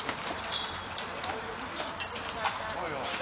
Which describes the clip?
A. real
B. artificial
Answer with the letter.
A